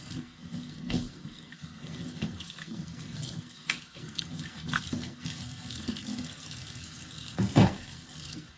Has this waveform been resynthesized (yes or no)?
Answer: yes